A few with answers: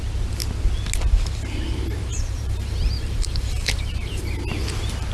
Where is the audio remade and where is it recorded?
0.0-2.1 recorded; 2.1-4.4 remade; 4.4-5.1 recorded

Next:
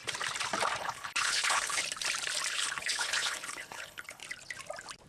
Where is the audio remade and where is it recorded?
0.0-0.8 recorded; 0.8-1.8 remade; 1.8-2.5 recorded; 2.5-4.2 remade; 4.2-5.1 recorded

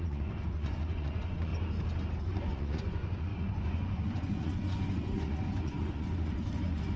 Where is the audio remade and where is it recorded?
0.0-1.5 remade; 1.5-2.2 recorded; 2.2-7.0 remade